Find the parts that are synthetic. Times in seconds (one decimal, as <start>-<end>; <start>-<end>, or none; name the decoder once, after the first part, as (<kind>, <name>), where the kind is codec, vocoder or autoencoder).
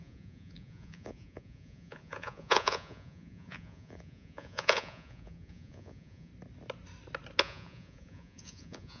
0.0-6.3 (vocoder, Vocos); 7.4-9.0